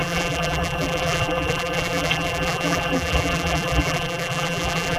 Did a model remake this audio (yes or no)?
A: yes